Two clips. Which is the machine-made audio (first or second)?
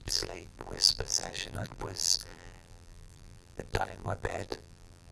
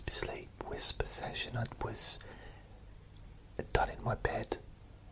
first